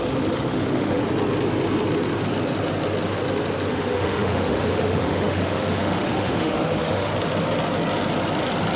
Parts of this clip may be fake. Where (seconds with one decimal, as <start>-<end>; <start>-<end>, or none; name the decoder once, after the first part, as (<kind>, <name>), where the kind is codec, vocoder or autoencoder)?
0.0-1.0 (autoencoder, DAC-VAE); 3.7-7.1